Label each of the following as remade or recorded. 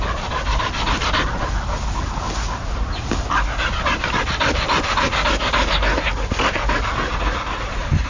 recorded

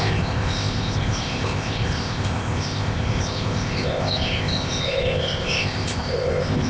remade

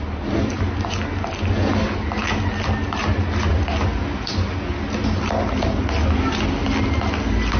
recorded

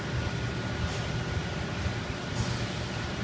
recorded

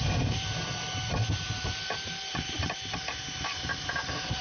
recorded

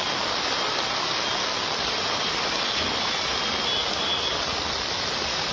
recorded